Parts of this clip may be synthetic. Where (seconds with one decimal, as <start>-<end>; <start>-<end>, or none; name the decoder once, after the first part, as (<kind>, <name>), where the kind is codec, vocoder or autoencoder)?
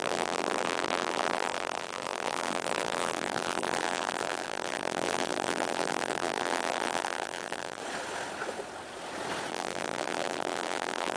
0.0-7.8 (vocoder, BigVGAN v2); 9.5-11.2